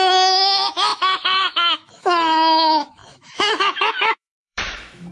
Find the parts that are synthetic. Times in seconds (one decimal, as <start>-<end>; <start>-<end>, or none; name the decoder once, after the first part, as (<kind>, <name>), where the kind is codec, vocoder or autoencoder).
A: 0.0-5.1 (autoencoder, DAC-VAE)